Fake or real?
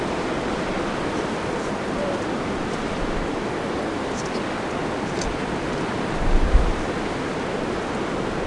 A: real